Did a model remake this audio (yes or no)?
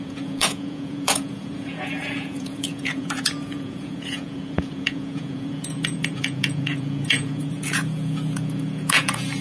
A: yes